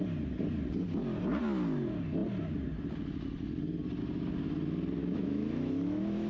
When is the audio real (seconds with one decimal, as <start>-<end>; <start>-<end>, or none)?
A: 0.0-5.0